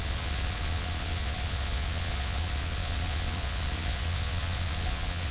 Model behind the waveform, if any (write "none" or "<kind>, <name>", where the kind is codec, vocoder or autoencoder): vocoder, Vocos